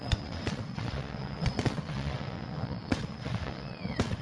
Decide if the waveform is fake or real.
fake